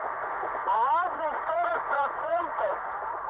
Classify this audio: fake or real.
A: fake